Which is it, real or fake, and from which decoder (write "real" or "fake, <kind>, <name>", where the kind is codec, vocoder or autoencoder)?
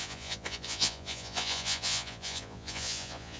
fake, vocoder, Vocos